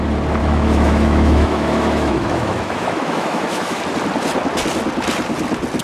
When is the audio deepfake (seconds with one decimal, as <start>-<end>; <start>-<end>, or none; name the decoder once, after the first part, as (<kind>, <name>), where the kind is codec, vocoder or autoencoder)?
0.4-3.8 (autoencoder, DAC-VAE)